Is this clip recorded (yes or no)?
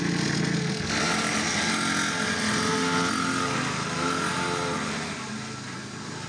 yes